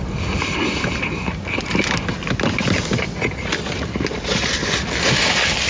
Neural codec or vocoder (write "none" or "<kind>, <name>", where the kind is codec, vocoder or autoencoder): none